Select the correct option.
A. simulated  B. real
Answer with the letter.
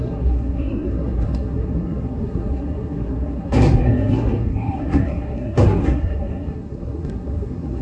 A